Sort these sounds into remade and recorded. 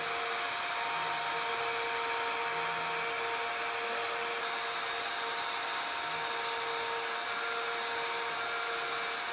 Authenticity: recorded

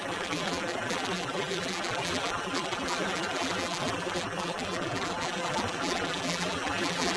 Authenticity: remade